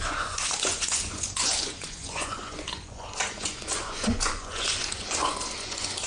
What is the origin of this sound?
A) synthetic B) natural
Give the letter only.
A